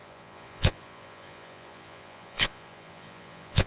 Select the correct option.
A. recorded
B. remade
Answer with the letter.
B